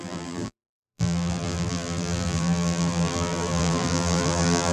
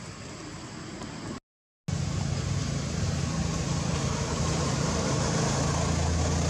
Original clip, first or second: second